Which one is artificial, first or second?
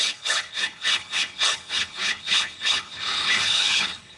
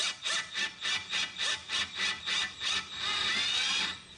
first